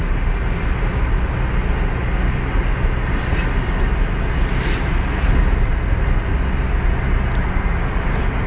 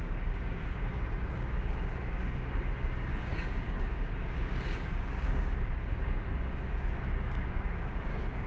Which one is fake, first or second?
second